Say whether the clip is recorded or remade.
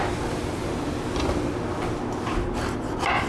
recorded